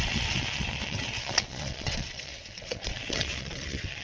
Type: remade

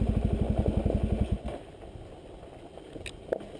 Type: recorded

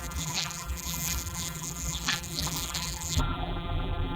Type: remade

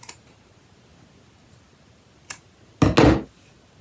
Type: recorded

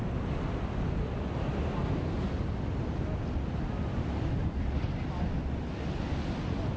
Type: recorded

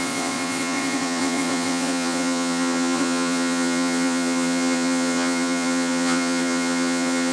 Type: remade